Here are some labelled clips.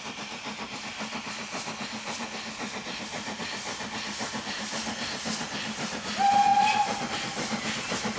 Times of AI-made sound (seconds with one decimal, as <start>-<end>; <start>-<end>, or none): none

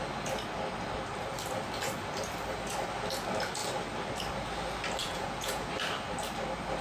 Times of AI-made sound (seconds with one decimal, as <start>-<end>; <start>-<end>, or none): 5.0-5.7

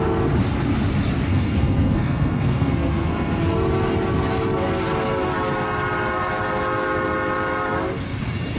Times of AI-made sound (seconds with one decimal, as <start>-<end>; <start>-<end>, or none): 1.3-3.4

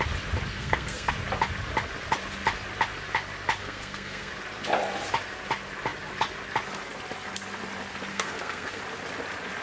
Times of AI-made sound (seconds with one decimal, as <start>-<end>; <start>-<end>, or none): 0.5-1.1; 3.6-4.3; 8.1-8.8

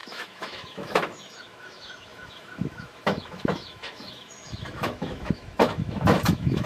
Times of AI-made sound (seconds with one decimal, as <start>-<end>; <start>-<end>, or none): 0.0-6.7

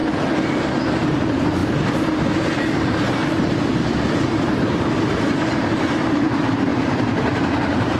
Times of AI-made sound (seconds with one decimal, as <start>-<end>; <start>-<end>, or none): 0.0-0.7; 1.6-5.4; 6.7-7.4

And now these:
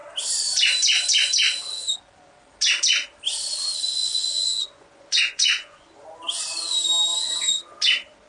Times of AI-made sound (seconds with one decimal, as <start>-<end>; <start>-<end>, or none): 4.0-5.9